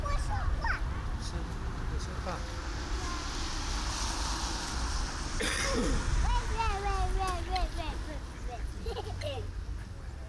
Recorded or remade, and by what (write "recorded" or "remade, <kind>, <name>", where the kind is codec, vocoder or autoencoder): recorded